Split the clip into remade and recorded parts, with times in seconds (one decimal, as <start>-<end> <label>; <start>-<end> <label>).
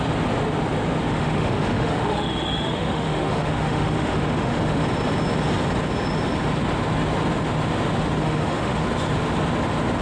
0.0-1.1 recorded; 1.1-4.8 remade; 4.8-8.2 recorded; 8.2-8.8 remade; 8.8-10.0 recorded